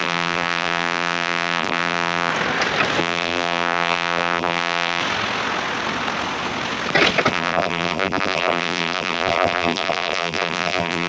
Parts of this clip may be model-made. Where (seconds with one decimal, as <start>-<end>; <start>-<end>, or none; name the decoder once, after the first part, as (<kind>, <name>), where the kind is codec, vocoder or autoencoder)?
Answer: 0.0-2.3 (vocoder, BigVGAN v2); 3.0-5.0; 7.3-11.1